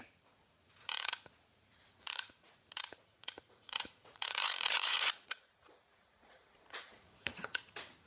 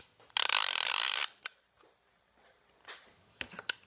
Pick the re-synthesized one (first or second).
first